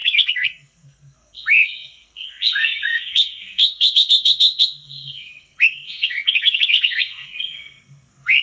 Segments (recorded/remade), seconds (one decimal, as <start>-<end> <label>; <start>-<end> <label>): 0.0-8.4 remade